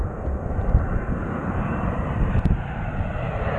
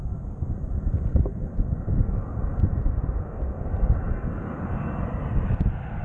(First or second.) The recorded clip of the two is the second